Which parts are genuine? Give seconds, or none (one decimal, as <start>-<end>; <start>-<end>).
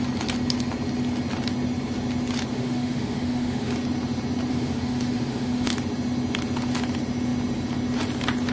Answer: 0.0-2.5; 3.7-4.5; 5.7-8.5